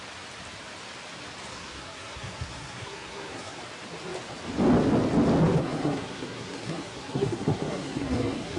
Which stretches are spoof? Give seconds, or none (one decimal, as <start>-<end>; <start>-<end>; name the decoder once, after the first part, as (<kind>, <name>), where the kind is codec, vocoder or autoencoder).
1.5-3.6 (codec, SNAC); 5.6-8.6